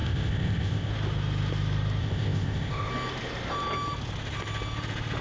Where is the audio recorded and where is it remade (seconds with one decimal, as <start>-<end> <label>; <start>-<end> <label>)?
0.0-0.9 remade; 0.9-2.0 recorded; 2.0-2.9 remade; 2.9-5.2 recorded